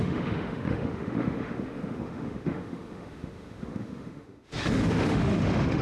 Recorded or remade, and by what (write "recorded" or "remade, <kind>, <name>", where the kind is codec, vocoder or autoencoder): remade, autoencoder, DAC-VAE